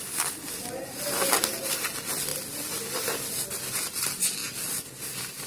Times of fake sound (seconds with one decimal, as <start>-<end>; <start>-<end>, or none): none